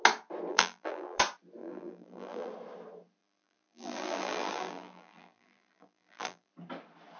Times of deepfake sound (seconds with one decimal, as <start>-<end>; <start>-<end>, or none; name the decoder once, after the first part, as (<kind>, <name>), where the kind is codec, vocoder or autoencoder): 0.5-1.2 (vocoder, BigVGAN v2); 1.6-2.5; 3.2-6.5